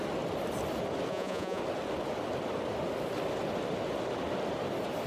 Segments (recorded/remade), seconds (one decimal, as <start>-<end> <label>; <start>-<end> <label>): 0.0-1.1 recorded; 1.1-1.6 remade; 1.6-5.1 recorded